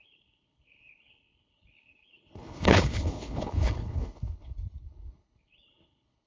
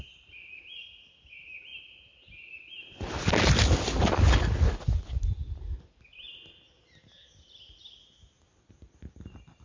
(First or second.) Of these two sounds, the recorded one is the second